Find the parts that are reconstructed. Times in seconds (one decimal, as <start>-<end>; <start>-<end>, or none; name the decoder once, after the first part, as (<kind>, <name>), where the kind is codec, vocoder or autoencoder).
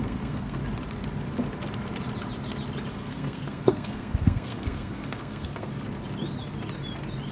0.0-0.6 (codec, SNAC); 2.9-5.7